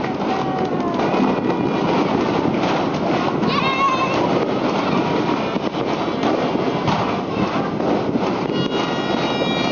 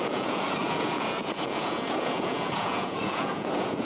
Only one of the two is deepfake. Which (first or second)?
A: second